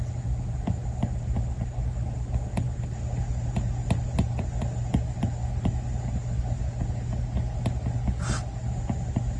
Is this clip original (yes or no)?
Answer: yes